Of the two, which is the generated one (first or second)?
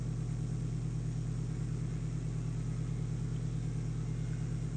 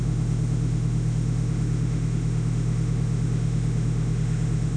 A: second